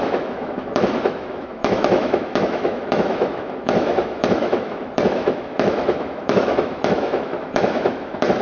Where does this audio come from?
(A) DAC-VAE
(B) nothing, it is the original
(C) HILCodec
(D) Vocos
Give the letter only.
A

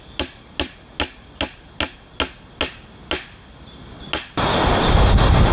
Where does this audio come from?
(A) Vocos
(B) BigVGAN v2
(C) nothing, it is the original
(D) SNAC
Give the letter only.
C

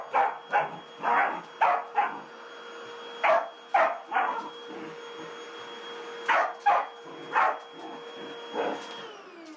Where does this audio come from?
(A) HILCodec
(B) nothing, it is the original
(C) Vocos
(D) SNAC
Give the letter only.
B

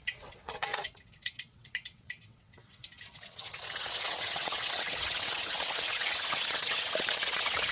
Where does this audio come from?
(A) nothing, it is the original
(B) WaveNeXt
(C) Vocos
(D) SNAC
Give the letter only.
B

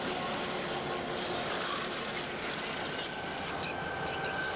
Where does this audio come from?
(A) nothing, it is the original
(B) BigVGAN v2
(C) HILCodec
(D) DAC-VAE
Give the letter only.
A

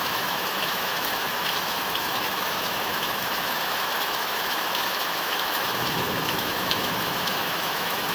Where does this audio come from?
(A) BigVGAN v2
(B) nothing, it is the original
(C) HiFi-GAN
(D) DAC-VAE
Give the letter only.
D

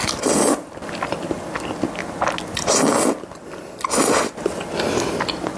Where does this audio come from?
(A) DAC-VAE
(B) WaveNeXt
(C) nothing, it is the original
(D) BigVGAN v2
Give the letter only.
C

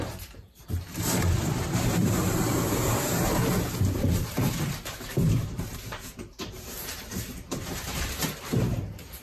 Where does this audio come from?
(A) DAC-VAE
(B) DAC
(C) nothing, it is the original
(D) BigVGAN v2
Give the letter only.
D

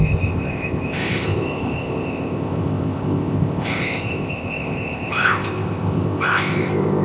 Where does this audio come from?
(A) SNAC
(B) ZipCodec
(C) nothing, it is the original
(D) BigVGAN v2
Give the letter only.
B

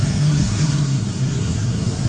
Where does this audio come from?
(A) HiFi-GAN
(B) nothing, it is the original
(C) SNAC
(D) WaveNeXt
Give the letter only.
C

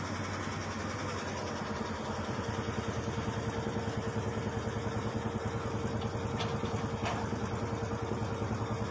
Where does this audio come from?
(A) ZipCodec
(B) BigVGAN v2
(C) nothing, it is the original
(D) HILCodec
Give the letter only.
C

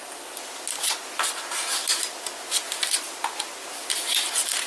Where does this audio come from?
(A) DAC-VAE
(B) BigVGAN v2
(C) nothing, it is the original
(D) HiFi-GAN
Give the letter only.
C